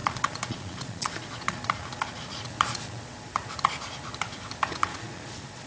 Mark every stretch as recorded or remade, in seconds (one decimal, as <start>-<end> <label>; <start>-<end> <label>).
0.0-3.4 remade; 3.4-4.7 recorded; 4.7-5.7 remade

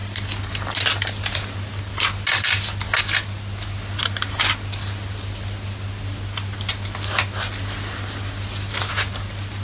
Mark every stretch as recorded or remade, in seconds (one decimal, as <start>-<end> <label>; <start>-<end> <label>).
0.0-9.6 recorded

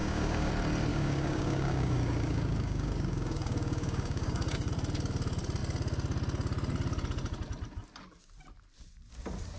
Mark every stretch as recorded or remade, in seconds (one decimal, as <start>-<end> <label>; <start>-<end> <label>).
0.0-0.5 remade; 0.5-0.9 recorded; 0.9-4.7 remade; 4.7-9.6 recorded

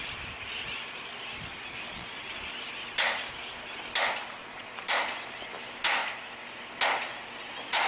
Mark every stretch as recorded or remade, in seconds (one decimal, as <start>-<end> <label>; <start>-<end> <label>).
0.0-1.5 recorded; 1.5-2.3 remade; 2.3-4.4 recorded; 4.4-5.0 remade; 5.0-7.9 recorded